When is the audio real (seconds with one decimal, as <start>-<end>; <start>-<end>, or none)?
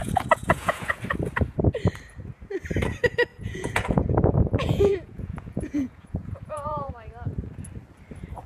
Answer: 1.0-3.3; 6.9-8.5